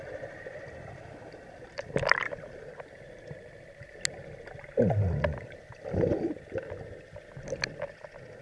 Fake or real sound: real